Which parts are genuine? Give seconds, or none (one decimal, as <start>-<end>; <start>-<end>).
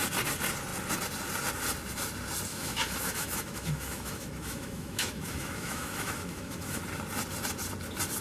0.0-2.5; 6.8-8.2